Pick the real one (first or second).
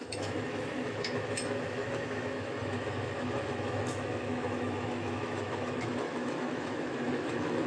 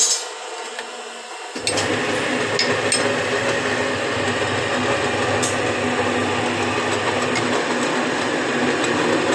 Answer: second